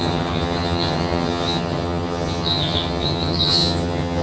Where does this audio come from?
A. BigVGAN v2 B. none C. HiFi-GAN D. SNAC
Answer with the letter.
C